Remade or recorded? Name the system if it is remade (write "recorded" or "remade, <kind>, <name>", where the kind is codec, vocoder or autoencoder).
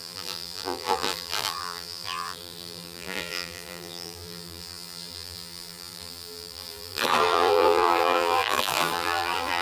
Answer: remade, vocoder, BigVGAN v2